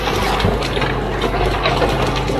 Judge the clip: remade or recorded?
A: recorded